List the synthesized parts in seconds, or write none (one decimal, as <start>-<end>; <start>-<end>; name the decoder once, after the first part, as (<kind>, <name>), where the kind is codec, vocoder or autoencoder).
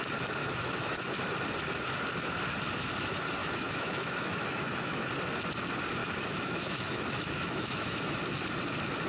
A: 0.4-1.1 (autoencoder, DAC-VAE); 3.4-5.1; 6.0-8.2